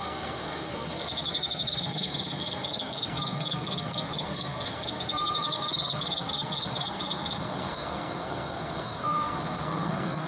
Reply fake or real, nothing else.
fake